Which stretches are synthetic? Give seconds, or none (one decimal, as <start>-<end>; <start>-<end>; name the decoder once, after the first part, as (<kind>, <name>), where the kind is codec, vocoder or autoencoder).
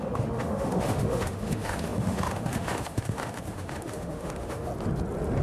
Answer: 0.0-4.7 (autoencoder, DAC-VAE)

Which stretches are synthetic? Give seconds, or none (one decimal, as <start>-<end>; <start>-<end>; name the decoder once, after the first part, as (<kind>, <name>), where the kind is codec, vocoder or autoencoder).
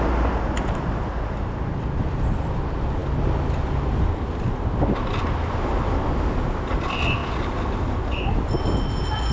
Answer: none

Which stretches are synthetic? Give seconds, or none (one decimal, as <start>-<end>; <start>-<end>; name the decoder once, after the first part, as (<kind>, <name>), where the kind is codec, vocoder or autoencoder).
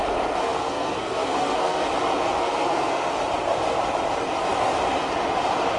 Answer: 0.4-1.9 (codec, SNAC); 2.4-3.1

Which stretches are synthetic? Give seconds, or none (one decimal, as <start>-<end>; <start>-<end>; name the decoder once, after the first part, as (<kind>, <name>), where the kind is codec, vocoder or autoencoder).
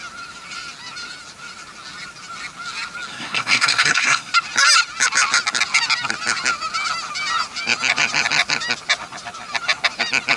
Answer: 3.1-4.3 (codec, SNAC)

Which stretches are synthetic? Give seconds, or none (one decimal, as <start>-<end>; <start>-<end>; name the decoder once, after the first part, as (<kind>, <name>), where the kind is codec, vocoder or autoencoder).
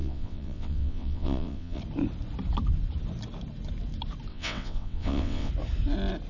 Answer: 0.0-1.8 (vocoder, WaveNeXt); 4.3-5.5